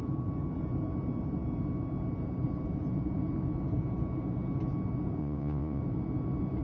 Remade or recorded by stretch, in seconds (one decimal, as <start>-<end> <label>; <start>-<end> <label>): 0.0-5.2 recorded; 5.2-5.8 remade; 5.8-6.6 recorded

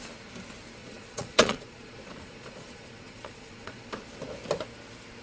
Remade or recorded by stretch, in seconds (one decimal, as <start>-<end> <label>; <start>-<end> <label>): 0.0-0.8 recorded; 0.8-3.9 remade; 3.9-5.2 recorded